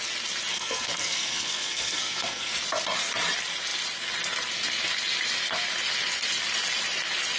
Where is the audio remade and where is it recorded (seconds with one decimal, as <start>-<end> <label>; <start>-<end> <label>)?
0.0-0.5 recorded; 0.5-2.5 remade; 2.5-7.4 recorded